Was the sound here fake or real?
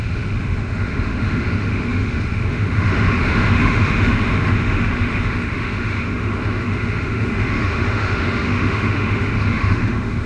fake